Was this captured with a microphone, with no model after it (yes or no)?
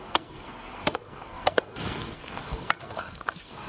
no